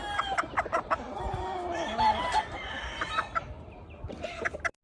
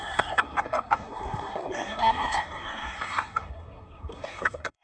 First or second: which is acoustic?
first